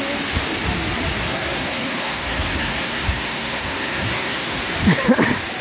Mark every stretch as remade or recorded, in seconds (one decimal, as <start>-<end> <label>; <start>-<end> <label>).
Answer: 0.0-1.2 recorded; 1.2-4.6 remade; 4.6-5.6 recorded